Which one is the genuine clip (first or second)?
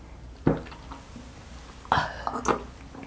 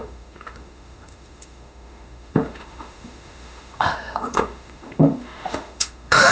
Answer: first